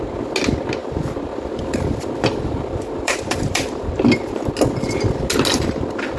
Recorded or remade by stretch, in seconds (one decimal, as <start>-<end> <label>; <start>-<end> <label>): 0.0-0.8 recorded; 0.8-4.5 remade; 4.5-5.5 recorded; 5.5-6.2 remade